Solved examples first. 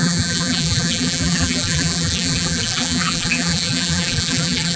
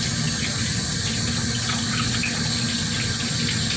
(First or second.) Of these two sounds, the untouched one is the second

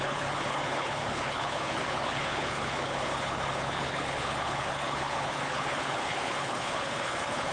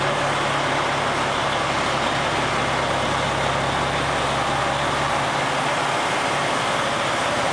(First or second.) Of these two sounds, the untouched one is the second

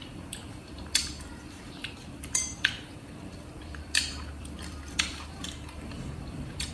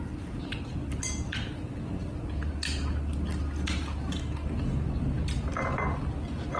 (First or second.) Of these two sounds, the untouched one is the second